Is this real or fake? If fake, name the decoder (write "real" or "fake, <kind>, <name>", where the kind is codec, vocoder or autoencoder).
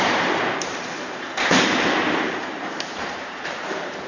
fake, vocoder, BigVGAN v2